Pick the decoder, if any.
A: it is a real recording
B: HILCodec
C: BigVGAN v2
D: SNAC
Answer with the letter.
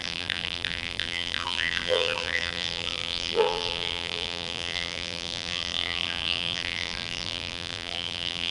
C